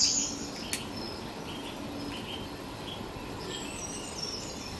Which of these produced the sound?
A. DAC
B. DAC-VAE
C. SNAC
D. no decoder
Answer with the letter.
D